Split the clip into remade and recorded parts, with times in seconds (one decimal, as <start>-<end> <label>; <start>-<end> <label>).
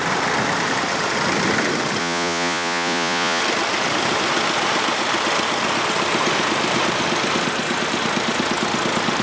0.0-2.0 recorded; 2.0-3.4 remade; 3.4-9.2 recorded